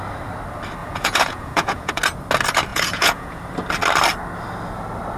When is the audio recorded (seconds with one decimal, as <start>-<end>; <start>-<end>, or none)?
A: 0.0-0.8; 2.0-2.7; 3.4-5.2